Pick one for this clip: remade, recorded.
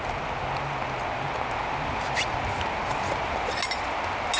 recorded